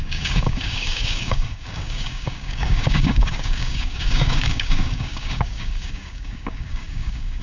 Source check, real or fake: fake